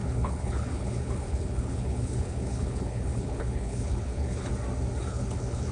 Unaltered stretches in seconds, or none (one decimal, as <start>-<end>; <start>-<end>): 4.5-5.1